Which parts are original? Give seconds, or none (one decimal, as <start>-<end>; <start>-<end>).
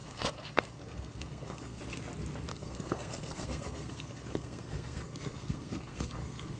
1.8-2.5